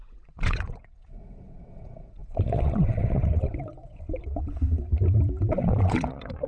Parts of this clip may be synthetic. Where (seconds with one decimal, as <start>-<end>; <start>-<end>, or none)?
0.0-4.9; 5.4-6.5